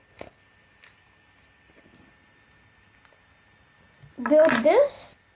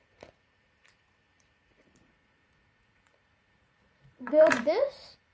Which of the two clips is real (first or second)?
first